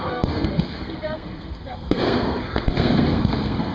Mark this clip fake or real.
fake